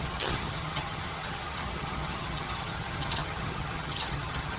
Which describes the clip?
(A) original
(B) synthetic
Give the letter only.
B